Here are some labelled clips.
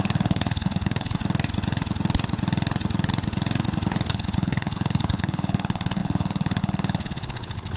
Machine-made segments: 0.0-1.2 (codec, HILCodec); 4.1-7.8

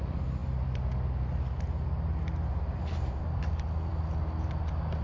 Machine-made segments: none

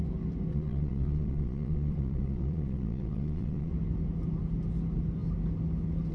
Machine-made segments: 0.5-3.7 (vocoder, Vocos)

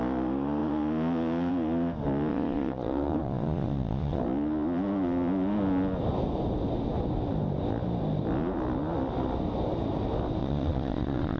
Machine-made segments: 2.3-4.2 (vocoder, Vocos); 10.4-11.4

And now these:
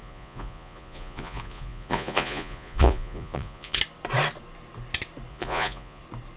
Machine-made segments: 0.0-3.8 (vocoder, Vocos); 5.3-6.0